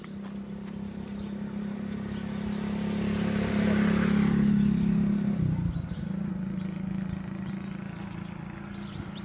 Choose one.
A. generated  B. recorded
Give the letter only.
B